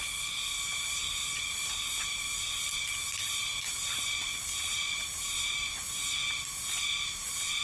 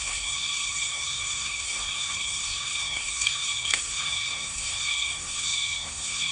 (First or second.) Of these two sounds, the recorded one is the first